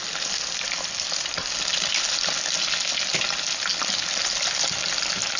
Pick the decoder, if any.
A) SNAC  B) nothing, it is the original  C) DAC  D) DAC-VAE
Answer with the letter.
B